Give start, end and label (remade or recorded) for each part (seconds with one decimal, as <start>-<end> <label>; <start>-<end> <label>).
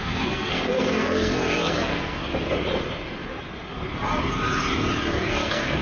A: 0.0-2.2 remade; 2.2-5.3 recorded; 5.3-5.8 remade